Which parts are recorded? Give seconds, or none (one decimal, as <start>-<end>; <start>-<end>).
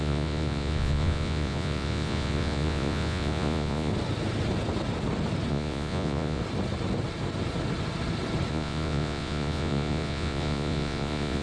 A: 3.9-5.5; 6.4-8.5